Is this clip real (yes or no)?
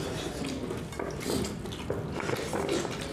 yes